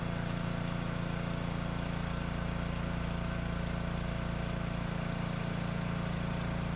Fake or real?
real